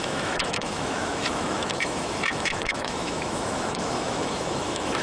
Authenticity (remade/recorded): remade